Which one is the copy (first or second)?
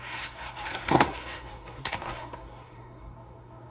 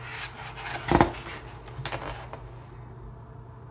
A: first